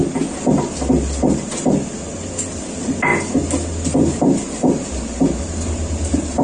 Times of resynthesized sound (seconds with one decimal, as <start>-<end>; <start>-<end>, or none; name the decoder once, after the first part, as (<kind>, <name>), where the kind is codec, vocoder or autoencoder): none